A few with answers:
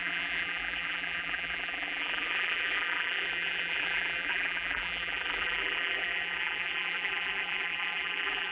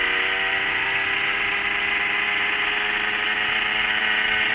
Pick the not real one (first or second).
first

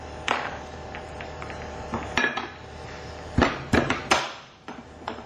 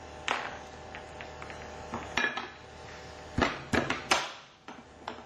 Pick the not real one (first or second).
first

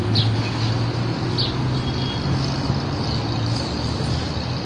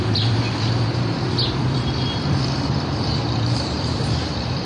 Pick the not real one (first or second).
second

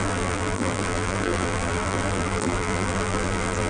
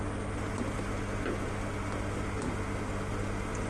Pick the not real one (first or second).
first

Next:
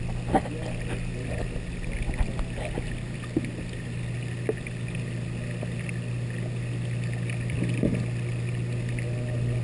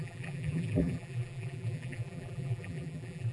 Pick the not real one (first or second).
second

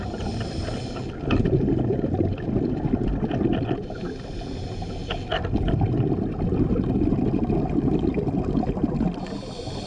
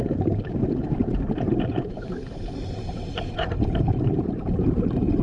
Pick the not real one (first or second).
second